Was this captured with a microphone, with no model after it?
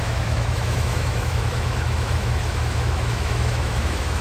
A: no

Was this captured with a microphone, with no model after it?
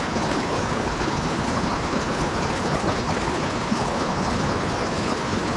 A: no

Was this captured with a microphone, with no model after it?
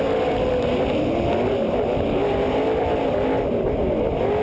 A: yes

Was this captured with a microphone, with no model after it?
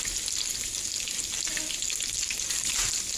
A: yes